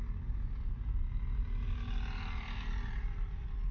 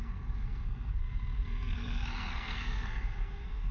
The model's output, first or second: second